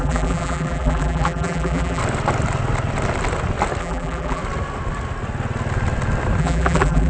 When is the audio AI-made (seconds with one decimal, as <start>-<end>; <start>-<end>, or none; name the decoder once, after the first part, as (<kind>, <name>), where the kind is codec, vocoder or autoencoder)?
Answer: 0.0-2.0 (vocoder, BigVGAN v2); 3.8-4.4; 6.4-7.1